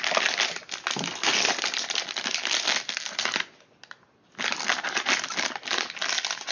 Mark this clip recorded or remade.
recorded